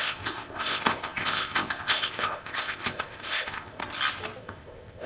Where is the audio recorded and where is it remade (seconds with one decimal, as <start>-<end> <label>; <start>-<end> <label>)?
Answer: 0.0-3.8 remade; 3.8-4.4 recorded; 4.4-5.1 remade